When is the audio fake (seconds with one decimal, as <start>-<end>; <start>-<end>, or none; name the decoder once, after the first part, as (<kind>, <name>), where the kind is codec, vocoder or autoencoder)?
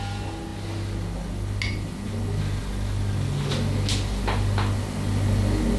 none